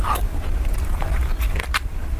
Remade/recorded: remade